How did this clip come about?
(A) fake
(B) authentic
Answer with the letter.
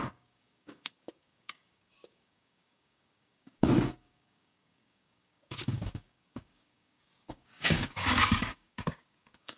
A